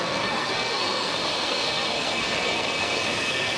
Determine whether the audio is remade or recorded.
remade